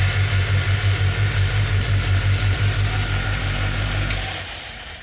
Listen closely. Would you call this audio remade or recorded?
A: remade